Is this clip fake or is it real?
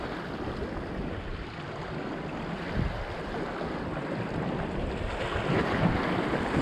real